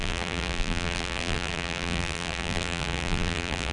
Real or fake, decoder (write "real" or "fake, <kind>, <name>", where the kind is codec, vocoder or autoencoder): fake, vocoder, BigVGAN v2